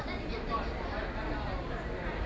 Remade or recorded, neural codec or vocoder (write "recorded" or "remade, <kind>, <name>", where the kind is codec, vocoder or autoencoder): recorded